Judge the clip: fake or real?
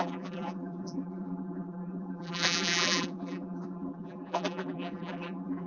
fake